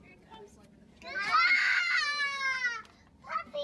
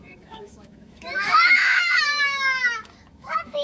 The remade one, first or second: second